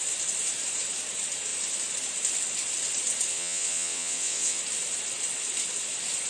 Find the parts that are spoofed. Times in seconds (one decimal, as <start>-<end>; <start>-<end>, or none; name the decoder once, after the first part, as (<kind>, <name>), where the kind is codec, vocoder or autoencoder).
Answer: 3.3-4.6 (vocoder, WaveNeXt)